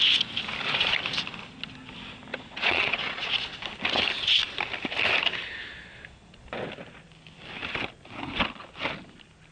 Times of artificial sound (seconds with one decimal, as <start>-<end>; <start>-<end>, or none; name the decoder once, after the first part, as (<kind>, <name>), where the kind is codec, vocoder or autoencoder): 2.3-3.3 (vocoder, Vocos)